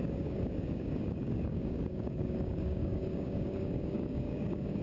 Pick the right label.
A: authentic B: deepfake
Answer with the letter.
B